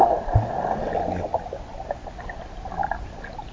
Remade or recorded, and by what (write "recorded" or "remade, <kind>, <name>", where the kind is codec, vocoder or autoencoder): recorded